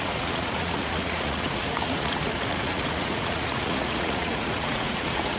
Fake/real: fake